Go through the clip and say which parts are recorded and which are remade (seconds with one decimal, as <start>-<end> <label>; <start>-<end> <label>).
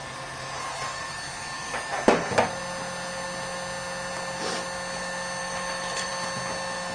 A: 0.0-5.4 recorded; 5.4-6.1 remade; 6.1-6.9 recorded